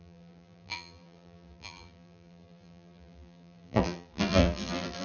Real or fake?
fake